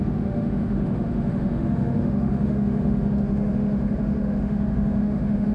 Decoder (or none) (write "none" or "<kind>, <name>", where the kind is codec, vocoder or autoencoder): autoencoder, DAC-VAE